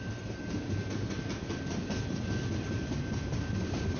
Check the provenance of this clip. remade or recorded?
recorded